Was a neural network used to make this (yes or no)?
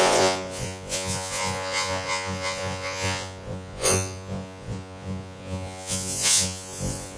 yes